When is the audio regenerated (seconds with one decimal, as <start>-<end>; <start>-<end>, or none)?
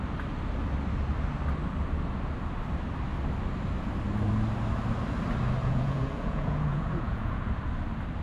5.6-7.5